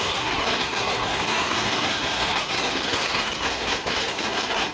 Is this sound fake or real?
fake